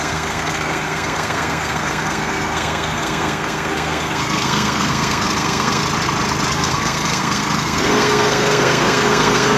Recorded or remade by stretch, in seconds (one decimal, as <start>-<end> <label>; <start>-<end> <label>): 0.0-5.8 remade; 5.8-6.5 recorded; 6.5-9.6 remade